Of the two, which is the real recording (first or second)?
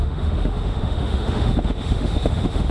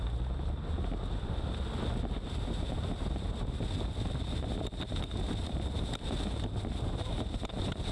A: second